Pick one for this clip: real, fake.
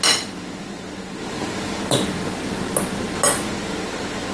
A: real